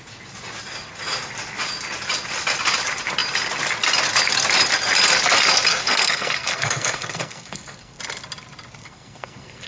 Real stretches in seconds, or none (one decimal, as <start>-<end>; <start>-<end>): 0.0-5.7; 8.0-8.8